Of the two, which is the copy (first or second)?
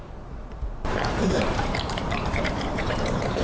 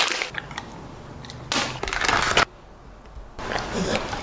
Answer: first